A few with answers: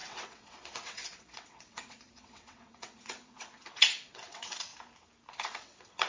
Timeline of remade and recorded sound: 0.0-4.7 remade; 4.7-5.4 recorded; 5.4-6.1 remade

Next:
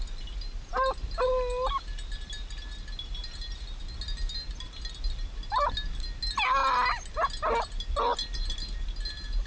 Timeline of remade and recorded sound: 0.0-9.5 recorded

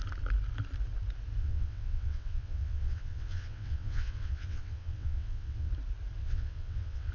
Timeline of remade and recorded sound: 0.0-1.4 recorded; 1.4-5.7 remade; 5.7-6.2 recorded; 6.2-7.1 remade

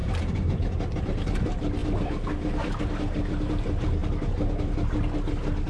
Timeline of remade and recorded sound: 0.0-5.7 recorded

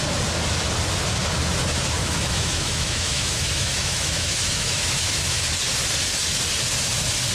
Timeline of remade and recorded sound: 0.0-2.0 recorded; 2.0-5.4 remade; 5.4-7.3 recorded

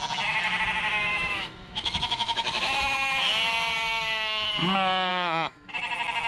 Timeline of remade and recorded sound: 0.0-1.1 recorded; 1.1-4.5 remade; 4.5-5.1 recorded; 5.1-5.7 remade; 5.7-6.3 recorded